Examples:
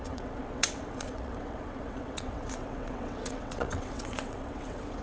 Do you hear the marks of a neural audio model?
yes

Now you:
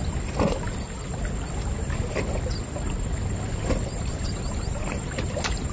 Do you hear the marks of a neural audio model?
no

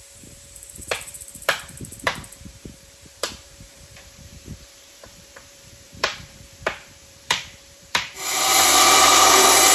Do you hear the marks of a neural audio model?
yes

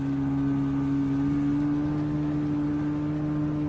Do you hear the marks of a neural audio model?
no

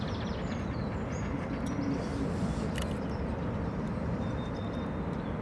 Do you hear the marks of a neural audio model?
no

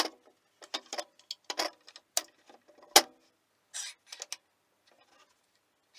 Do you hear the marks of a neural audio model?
no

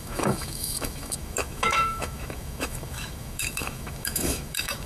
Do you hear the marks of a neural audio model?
yes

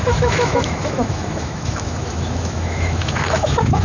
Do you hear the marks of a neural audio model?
yes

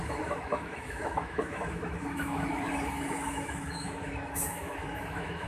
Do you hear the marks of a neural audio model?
yes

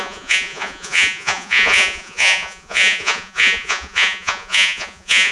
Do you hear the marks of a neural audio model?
yes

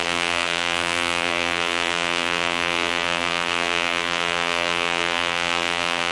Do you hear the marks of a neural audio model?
yes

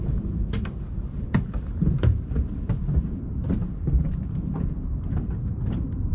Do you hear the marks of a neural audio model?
yes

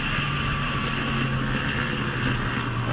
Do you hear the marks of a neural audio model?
no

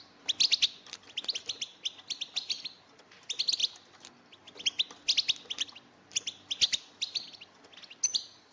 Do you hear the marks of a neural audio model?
no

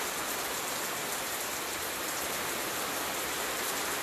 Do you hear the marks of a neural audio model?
no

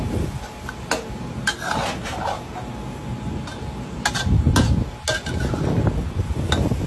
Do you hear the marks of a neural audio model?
no